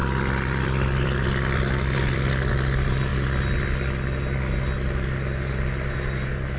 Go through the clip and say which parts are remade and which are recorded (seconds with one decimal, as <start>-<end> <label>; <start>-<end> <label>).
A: 0.0-2.5 remade; 2.5-6.6 recorded